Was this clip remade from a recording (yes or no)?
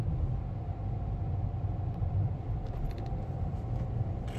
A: no